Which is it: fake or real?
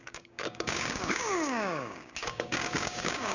fake